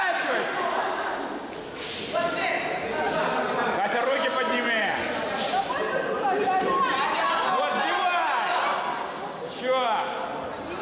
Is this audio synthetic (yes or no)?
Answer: no